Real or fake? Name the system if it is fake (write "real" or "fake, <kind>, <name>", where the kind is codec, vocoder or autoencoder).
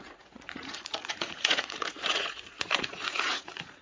fake, vocoder, Vocos